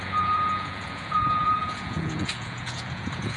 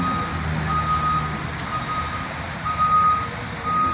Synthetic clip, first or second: first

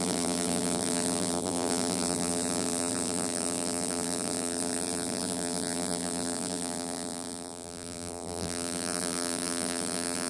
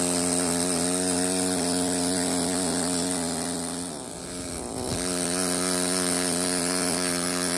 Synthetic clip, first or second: first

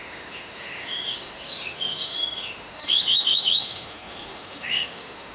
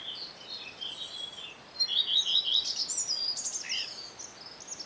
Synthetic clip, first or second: first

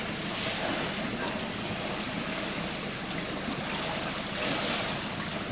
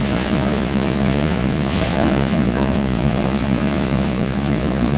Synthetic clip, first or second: second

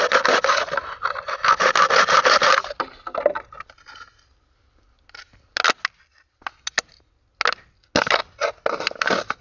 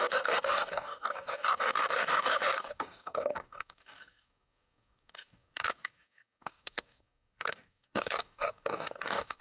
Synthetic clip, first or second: second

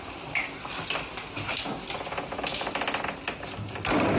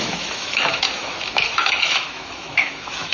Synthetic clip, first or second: second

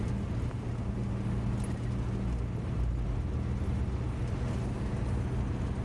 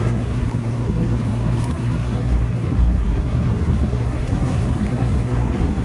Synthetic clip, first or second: second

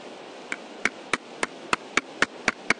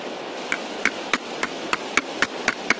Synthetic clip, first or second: second